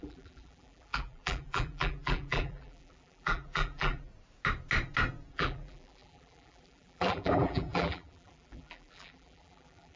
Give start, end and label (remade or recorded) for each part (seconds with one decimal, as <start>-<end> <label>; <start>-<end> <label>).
0.0-4.1 remade; 4.1-5.3 recorded; 5.3-10.0 remade